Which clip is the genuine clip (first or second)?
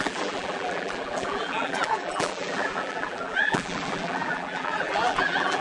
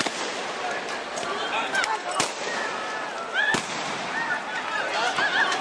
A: second